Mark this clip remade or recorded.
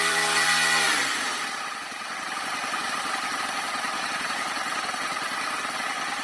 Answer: remade